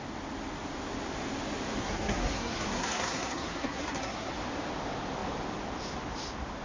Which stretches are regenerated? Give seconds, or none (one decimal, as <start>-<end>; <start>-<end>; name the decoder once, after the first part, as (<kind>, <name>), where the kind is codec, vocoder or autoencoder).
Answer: 1.8-4.3 (codec, SNAC)